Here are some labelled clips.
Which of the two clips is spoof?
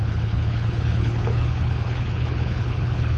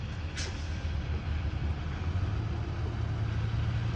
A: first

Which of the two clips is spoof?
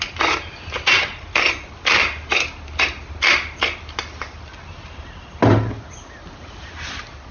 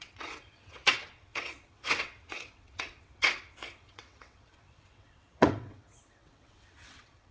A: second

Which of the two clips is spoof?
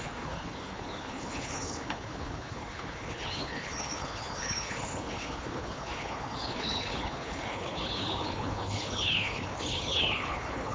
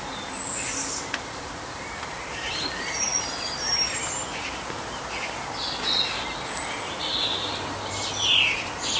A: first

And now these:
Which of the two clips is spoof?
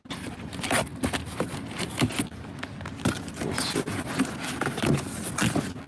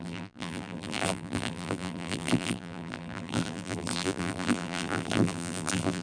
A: second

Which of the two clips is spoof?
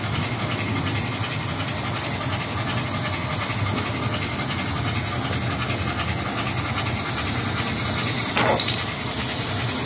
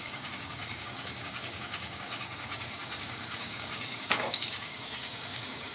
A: second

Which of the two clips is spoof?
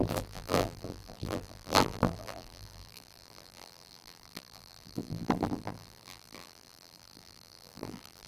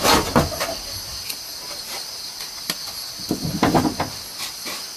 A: first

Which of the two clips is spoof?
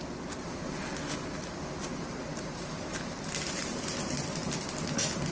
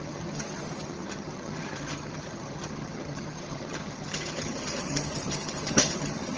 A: second